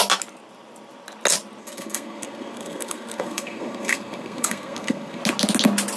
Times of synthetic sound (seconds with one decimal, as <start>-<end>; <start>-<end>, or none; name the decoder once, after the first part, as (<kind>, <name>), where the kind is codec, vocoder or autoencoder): 1.6-5.2 (codec, SNAC)